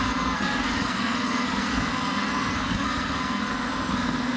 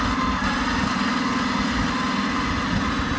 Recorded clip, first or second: second